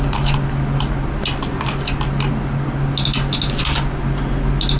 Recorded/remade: recorded